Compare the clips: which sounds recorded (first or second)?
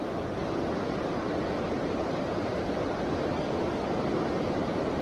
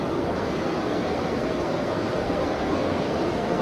first